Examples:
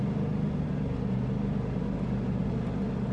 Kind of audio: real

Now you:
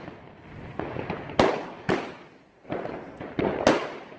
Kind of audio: real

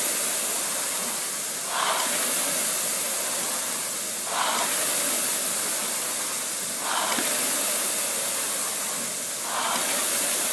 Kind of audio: real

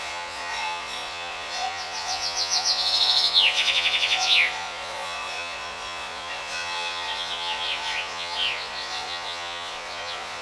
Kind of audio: fake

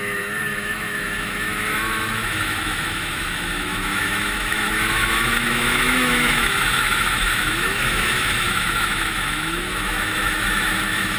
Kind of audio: fake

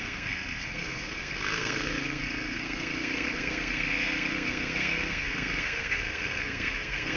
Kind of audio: fake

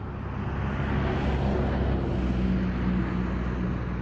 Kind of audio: real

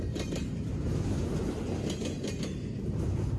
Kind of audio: real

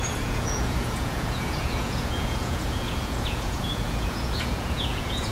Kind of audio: fake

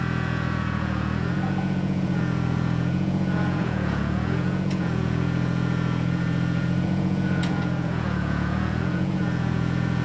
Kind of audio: fake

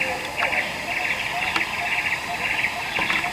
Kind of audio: real